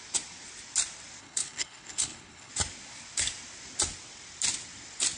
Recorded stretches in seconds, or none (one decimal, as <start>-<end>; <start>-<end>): 0.0-1.2; 2.5-5.2